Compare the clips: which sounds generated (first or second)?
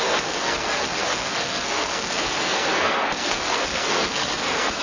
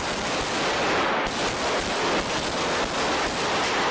first